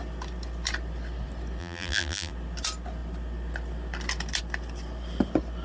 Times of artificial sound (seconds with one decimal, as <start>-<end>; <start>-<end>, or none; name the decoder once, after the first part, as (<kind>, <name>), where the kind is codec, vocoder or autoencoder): 1.6-2.3 (vocoder, BigVGAN v2)